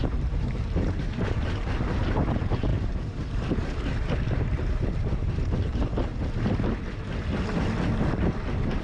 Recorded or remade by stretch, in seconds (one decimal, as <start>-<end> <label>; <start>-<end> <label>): 0.0-6.1 remade; 6.1-8.0 recorded; 8.0-8.8 remade